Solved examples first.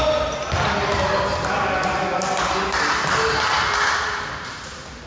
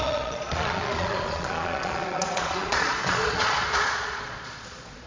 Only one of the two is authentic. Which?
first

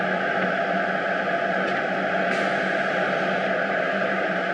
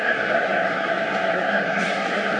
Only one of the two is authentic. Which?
first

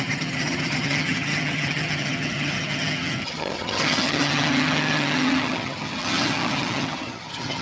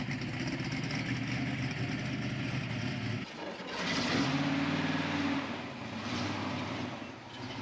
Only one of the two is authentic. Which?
second